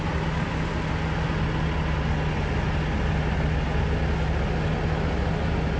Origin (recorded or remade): recorded